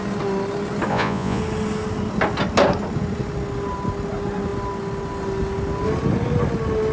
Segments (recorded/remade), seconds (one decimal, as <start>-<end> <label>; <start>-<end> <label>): 0.0-0.9 recorded; 0.9-1.4 remade; 1.4-6.9 recorded